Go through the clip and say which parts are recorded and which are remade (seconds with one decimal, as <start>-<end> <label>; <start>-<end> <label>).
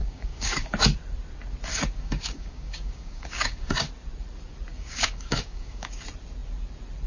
0.0-0.8 remade; 0.8-1.7 recorded; 1.7-3.9 remade; 3.9-4.7 recorded; 4.7-6.0 remade; 6.0-7.1 recorded